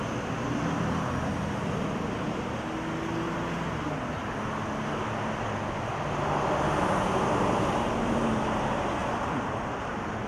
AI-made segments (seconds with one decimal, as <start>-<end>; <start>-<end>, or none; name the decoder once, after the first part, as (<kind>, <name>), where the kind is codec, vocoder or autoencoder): none